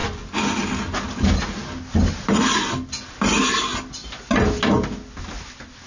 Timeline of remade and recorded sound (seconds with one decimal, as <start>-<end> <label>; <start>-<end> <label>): 0.0-5.9 recorded